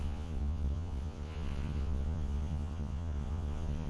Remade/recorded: remade